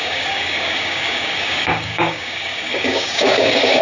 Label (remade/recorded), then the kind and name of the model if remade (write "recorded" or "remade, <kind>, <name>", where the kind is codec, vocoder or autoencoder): remade, codec, DAC